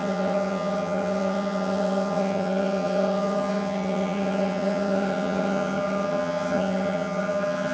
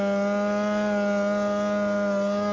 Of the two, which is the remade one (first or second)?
first